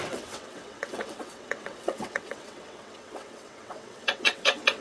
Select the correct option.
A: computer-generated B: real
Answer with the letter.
A